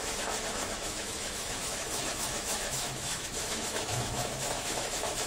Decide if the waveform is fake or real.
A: fake